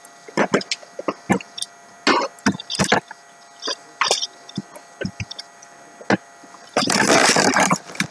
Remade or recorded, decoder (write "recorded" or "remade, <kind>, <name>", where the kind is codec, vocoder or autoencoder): recorded